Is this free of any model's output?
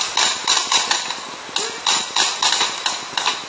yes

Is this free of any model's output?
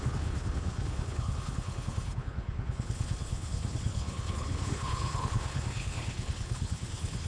no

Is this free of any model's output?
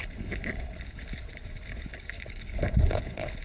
no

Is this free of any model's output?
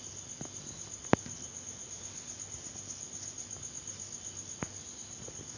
yes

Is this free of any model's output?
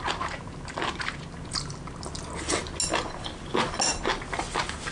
yes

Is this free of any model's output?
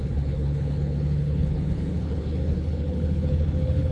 no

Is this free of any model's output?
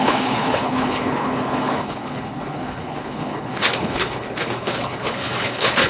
no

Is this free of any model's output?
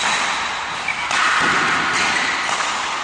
yes